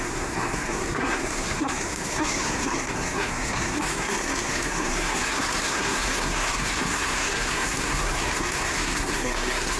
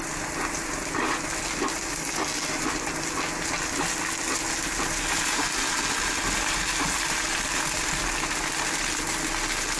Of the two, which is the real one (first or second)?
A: second